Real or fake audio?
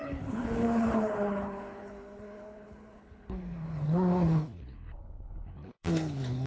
fake